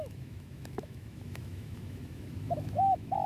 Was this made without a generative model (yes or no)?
no